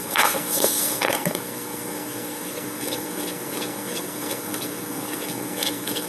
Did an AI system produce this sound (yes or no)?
yes